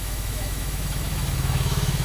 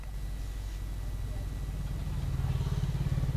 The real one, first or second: second